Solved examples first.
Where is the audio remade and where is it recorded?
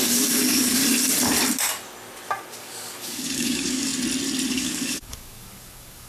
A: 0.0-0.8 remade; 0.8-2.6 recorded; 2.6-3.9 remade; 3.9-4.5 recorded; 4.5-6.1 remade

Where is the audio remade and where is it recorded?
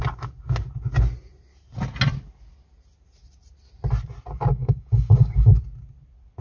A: 0.0-4.5 recorded; 4.5-5.6 remade; 5.6-6.4 recorded